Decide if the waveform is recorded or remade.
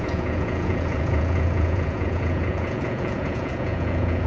remade